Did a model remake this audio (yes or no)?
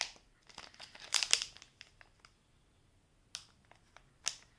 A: no